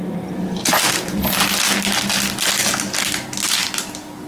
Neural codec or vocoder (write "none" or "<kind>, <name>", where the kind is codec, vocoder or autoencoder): none